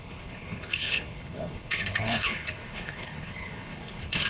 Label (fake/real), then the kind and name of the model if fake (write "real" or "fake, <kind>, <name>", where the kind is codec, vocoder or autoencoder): fake, codec, HILCodec